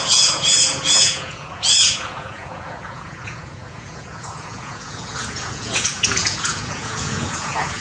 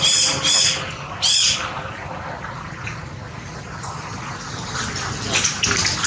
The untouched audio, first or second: second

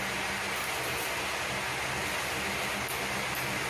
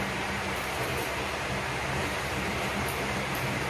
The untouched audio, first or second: first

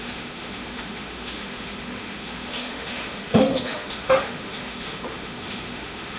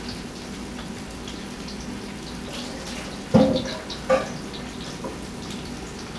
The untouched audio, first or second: second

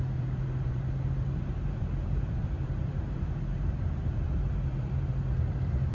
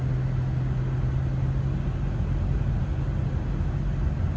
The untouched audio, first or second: second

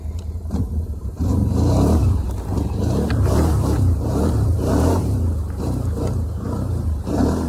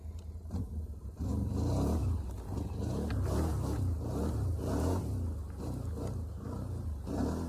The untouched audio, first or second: second